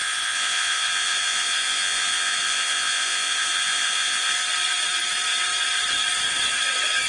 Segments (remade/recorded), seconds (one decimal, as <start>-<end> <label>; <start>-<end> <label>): 0.0-4.3 remade; 4.3-7.1 recorded